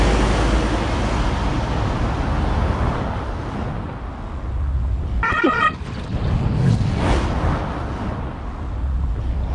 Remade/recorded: recorded